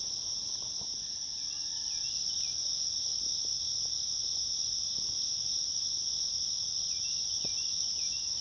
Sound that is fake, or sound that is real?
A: real